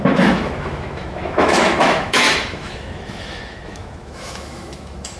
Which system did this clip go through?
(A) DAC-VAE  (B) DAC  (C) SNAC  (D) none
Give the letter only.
A